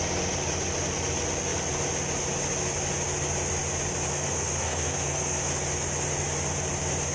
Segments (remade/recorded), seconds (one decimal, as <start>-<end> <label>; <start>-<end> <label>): 0.0-4.1 recorded; 4.1-5.5 remade; 5.5-7.1 recorded